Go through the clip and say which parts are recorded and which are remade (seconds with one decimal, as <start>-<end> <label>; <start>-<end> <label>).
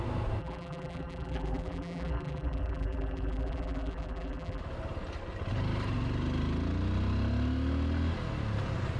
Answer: 0.0-0.4 recorded; 0.4-4.6 remade; 4.6-9.0 recorded